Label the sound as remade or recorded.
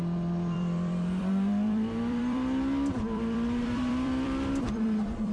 remade